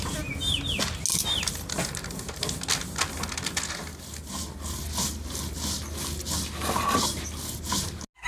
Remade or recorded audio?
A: recorded